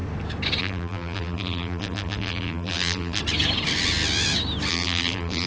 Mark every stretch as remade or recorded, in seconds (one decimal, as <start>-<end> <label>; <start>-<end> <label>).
0.0-0.6 recorded; 0.6-3.2 remade; 3.2-4.7 recorded; 4.7-5.5 remade